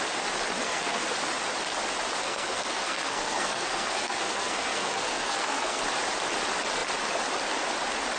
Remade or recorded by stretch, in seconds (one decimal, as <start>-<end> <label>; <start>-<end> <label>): 0.0-0.6 recorded; 0.6-1.1 remade; 1.1-2.2 recorded; 2.2-5.8 remade; 5.8-8.2 recorded